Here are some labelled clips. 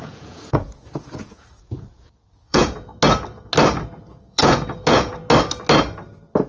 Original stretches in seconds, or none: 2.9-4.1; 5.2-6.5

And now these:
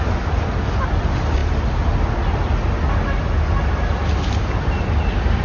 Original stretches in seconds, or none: 0.0-5.4

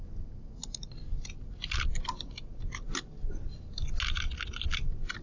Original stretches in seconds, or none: 0.0-5.2

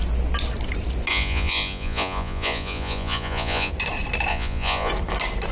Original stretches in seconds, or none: 0.0-1.1; 3.7-4.3; 4.9-5.5